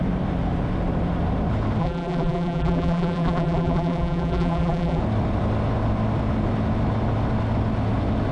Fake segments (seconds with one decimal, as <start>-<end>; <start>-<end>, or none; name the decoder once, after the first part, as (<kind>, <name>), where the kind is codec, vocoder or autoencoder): 1.8-5.0 (vocoder, BigVGAN v2)